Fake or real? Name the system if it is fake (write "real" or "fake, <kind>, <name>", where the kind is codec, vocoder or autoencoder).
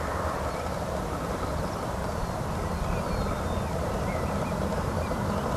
real